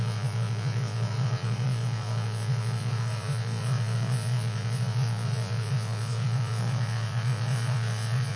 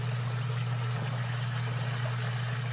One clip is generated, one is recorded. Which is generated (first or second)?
first